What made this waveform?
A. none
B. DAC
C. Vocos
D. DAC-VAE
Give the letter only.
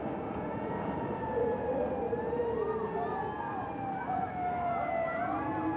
A